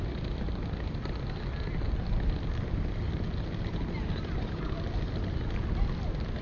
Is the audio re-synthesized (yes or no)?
no